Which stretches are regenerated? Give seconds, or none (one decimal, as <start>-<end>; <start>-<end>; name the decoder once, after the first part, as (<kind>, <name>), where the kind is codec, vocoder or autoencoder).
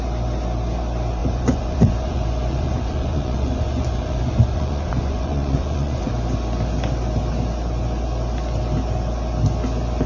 1.2-6.1 (vocoder, Vocos)